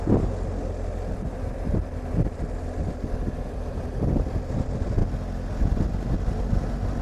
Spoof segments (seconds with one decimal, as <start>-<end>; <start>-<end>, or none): none